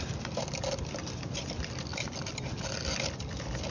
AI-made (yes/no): no